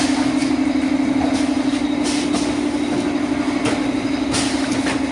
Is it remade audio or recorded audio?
recorded